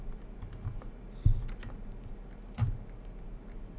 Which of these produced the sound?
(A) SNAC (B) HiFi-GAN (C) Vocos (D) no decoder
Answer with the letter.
D